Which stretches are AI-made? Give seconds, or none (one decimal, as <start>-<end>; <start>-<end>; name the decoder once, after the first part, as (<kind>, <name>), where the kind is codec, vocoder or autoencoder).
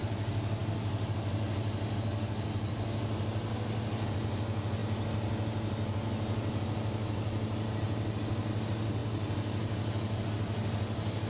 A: none